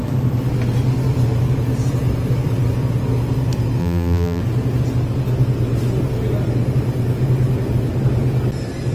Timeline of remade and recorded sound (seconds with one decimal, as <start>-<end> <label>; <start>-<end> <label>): 0.0-3.8 recorded; 3.8-4.4 remade; 4.4-8.9 recorded